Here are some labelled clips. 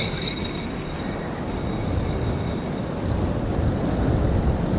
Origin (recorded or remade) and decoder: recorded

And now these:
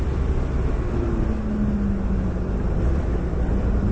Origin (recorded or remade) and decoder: recorded